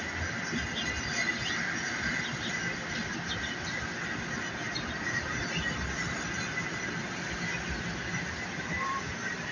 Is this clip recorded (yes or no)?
yes